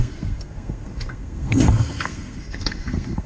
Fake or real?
fake